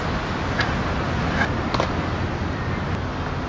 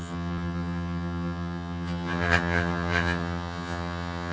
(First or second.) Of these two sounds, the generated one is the second